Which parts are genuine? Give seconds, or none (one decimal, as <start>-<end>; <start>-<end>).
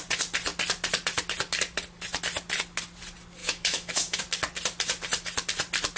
0.0-3.4; 4.2-6.0